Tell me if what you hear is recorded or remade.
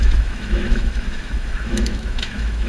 remade